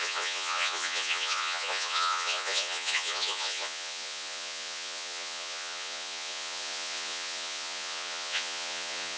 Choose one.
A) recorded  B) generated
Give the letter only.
B